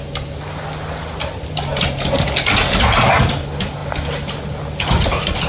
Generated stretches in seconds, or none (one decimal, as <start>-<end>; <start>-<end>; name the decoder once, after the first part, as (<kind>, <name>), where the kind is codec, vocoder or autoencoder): none